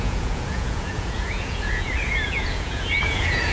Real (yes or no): no